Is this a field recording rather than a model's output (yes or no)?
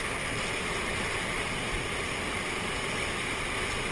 yes